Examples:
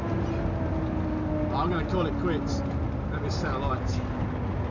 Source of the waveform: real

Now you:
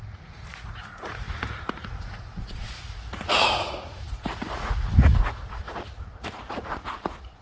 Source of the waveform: fake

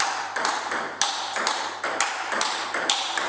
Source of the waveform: real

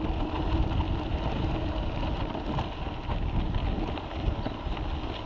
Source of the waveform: real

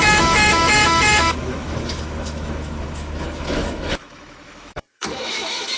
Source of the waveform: fake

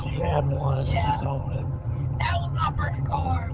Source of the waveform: fake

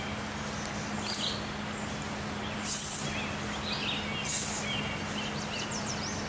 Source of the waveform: real